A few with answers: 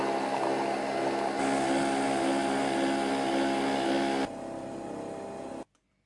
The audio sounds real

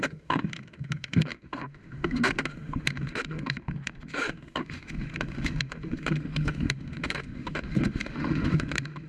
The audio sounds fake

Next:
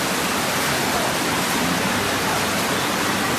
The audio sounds real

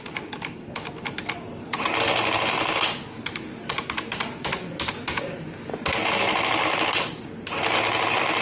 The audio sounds real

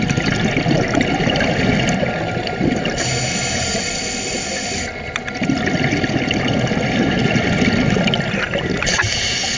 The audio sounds real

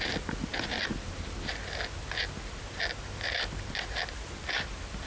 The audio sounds real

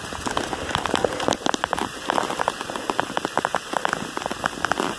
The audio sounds real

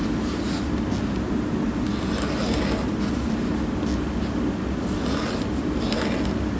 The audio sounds real